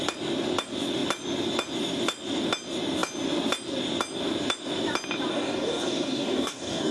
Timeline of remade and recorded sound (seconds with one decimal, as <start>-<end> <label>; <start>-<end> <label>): 0.0-5.3 recorded; 5.3-6.9 remade